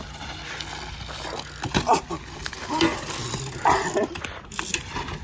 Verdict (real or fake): real